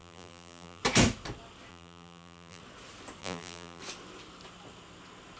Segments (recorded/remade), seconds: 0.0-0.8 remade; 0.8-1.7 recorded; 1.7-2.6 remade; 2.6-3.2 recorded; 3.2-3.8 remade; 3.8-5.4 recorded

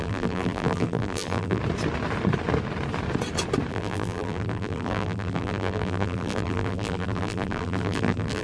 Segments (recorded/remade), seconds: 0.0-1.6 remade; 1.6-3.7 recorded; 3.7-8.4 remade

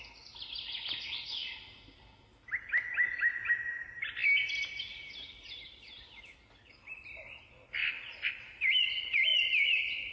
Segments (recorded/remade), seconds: 0.0-1.4 remade; 1.4-3.5 recorded; 3.5-4.2 remade; 4.2-4.8 recorded; 4.8-10.1 remade

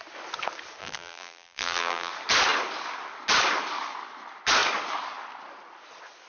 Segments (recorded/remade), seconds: 0.0-0.8 recorded; 0.8-2.1 remade; 2.1-6.3 recorded

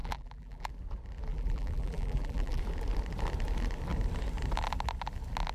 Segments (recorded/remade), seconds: 0.0-0.7 remade; 0.7-1.3 recorded; 1.3-2.6 remade; 2.6-5.5 recorded

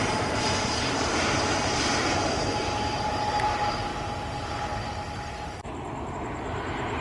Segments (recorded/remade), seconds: 0.0-3.9 remade; 3.9-6.1 recorded; 6.1-7.0 remade

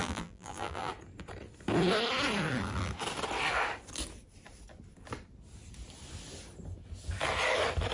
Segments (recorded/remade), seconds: 0.0-0.9 remade; 0.9-7.9 recorded

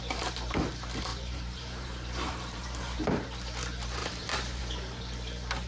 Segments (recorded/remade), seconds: 0.0-1.1 recorded; 1.1-3.0 remade; 3.0-4.0 recorded; 4.0-4.6 remade; 4.6-5.7 recorded